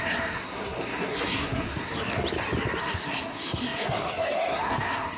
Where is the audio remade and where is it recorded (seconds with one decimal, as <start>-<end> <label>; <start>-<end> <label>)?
0.0-1.9 remade; 1.9-2.8 recorded; 2.8-5.2 remade